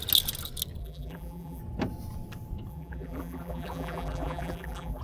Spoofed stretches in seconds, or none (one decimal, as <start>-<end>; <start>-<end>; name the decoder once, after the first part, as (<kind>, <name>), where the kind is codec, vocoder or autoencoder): 0.8-1.6 (vocoder, BigVGAN v2); 2.7-5.0